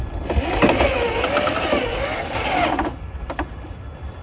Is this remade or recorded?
recorded